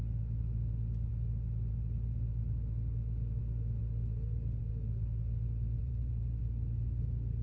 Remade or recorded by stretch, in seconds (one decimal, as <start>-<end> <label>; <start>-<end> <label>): 0.0-5.8 recorded; 5.8-6.4 remade; 6.4-7.4 recorded